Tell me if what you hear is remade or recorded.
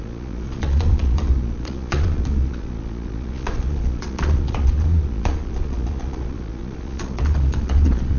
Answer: remade